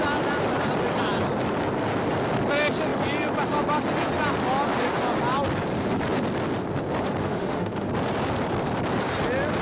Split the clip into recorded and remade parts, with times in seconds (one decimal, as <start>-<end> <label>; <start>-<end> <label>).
0.0-7.2 recorded; 7.2-7.9 remade; 7.9-9.6 recorded